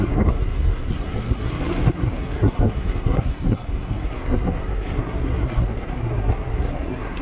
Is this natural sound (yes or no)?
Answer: no